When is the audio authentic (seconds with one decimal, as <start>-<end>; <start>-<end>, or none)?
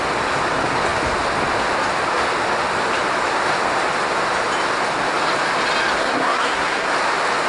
0.0-6.0; 6.9-7.5